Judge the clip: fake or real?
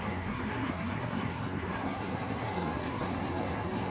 fake